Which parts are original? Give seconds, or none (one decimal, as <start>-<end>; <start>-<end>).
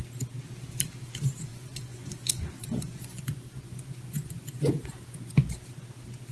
0.0-1.5; 5.3-6.3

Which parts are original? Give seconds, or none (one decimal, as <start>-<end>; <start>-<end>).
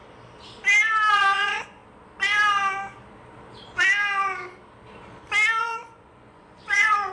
0.0-1.1; 1.8-5.6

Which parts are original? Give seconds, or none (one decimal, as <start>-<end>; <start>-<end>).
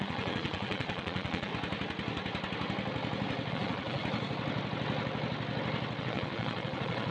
1.5-3.5; 4.0-6.0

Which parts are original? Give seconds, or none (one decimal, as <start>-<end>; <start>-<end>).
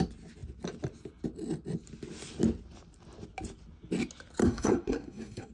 0.0-4.4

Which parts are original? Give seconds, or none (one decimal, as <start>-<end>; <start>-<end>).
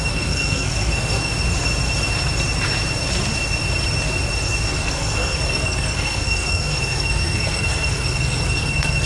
1.3-4.7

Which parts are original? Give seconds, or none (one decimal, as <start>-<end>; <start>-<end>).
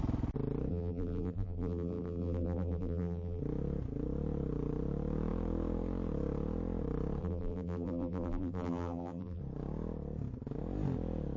0.0-0.7; 3.4-7.2; 9.4-11.4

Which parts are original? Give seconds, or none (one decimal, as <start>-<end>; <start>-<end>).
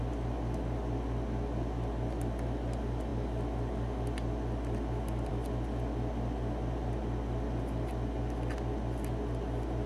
0.0-9.9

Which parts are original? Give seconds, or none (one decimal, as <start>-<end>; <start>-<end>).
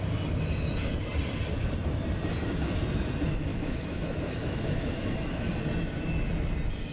0.0-3.5; 5.5-6.9